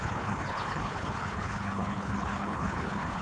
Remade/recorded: remade